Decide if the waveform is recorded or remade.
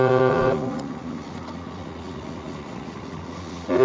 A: remade